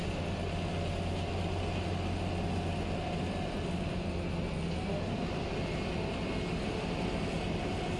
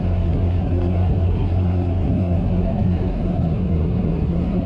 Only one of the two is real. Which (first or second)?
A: first